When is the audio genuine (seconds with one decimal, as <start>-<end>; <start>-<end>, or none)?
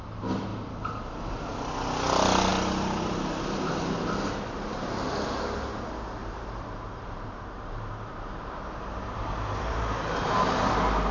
0.0-6.2; 10.7-11.1